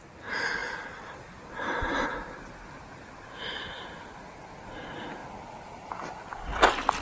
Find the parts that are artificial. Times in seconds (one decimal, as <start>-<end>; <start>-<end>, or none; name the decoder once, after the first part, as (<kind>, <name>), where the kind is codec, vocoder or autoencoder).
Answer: none